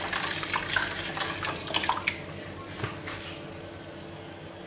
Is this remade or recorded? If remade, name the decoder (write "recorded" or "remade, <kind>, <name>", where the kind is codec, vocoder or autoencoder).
recorded